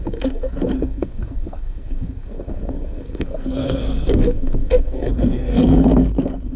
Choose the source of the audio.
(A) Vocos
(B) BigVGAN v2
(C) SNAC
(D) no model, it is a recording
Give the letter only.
C